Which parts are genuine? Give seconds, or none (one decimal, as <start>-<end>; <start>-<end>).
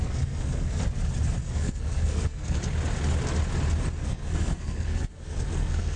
0.8-1.4; 2.6-4.0